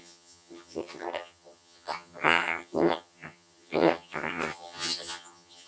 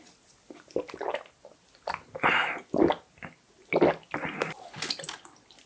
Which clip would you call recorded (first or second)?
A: second